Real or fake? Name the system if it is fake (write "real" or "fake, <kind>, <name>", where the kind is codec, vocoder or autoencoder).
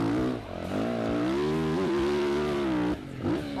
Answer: real